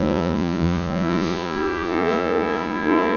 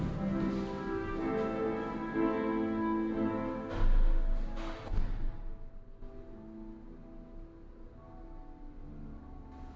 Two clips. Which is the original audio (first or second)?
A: second